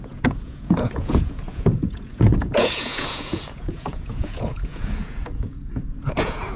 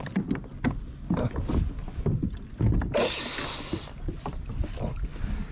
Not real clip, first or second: first